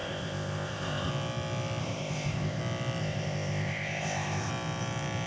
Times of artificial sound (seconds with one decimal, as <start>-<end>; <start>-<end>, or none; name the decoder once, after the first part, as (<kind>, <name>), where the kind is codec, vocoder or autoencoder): 0.0-1.1 (codec, ZipCodec); 1.8-2.6; 3.0-4.5